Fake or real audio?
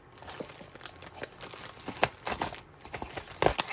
real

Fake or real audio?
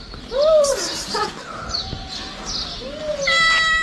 real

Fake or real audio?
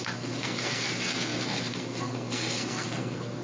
fake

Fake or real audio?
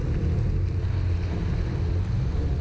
real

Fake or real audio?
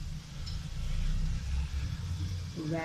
real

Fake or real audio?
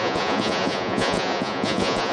fake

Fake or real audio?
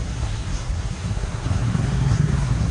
fake